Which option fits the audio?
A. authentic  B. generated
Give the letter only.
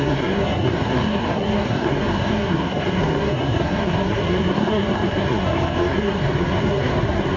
B